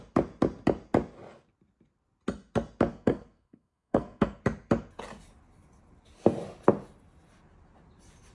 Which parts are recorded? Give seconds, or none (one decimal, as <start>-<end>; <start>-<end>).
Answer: 0.0-2.9; 4.4-8.3